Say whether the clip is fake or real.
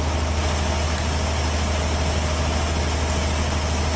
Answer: real